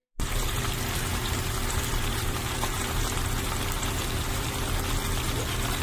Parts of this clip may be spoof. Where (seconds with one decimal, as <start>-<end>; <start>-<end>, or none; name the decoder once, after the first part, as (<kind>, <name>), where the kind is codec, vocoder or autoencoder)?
0.0-0.6 (vocoder, BigVGAN v2); 1.1-4.6